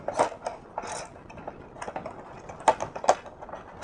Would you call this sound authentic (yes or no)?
yes